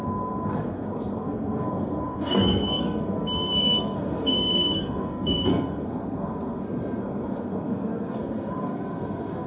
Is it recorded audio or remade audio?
remade